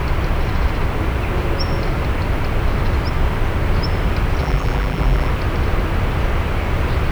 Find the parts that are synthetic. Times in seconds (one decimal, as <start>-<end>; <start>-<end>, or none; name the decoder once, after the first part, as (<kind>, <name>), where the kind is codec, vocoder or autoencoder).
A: 4.4-5.3 (vocoder, BigVGAN v2)